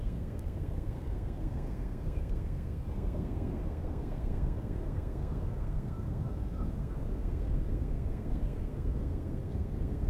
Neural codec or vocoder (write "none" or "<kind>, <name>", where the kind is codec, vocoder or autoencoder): codec, SNAC